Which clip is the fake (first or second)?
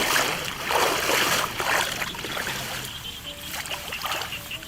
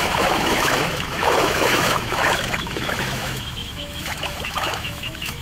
second